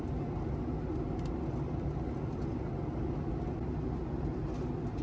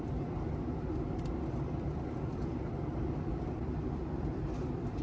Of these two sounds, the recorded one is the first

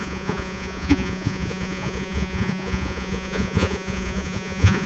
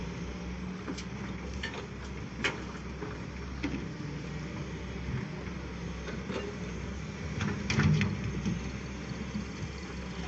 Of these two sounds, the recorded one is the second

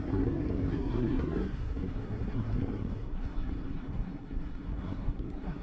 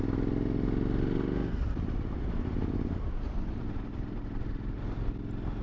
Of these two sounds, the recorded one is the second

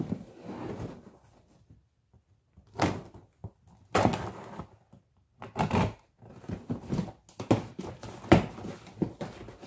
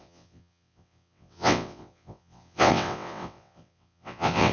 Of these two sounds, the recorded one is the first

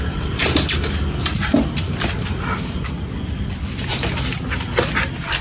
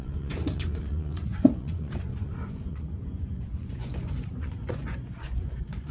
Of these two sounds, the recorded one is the first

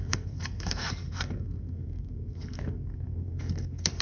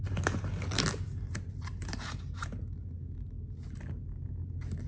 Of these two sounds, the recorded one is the second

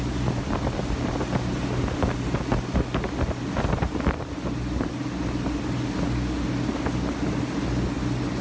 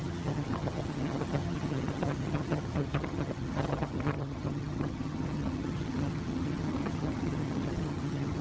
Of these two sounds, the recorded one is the first